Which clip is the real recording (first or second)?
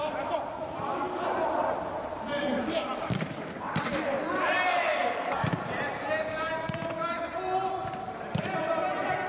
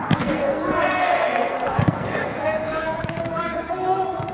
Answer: first